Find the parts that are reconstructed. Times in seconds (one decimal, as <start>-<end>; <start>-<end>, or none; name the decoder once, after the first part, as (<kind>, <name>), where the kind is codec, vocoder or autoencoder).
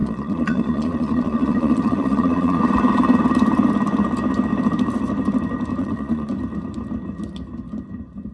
0.0-2.6 (vocoder, Vocos); 5.8-6.3